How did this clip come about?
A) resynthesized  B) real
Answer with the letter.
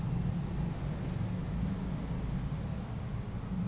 B